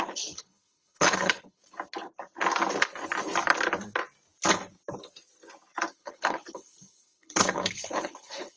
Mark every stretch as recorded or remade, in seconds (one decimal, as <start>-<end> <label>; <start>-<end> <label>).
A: 0.0-1.6 remade; 1.6-5.9 recorded; 5.9-8.6 remade